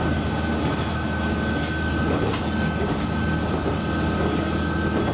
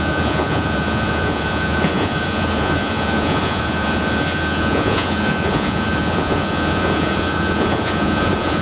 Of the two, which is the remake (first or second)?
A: second